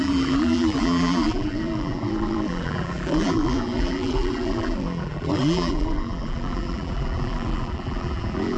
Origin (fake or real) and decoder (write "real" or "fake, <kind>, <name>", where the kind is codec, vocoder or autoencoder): fake, vocoder, BigVGAN v2